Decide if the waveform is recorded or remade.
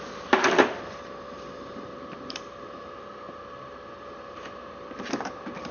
remade